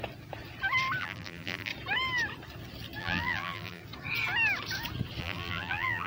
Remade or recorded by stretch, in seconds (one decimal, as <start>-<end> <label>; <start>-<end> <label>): 0.0-1.0 recorded; 1.0-1.7 remade; 1.7-3.0 recorded; 3.0-3.8 remade; 3.8-5.2 recorded; 5.2-6.1 remade